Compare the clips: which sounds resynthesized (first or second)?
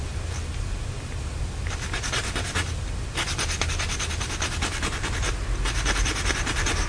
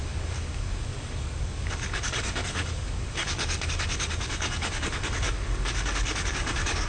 second